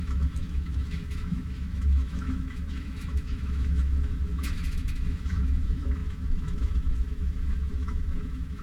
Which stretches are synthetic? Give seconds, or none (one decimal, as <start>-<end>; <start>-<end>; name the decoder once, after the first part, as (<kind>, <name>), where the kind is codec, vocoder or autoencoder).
0.0-8.6 (autoencoder, DAC-VAE)